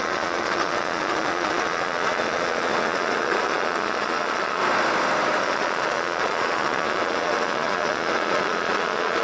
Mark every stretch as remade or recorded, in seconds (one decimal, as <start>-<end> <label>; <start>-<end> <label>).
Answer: 0.0-4.6 remade; 4.6-5.4 recorded; 5.4-9.2 remade